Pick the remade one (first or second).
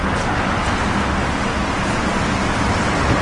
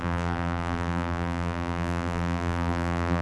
second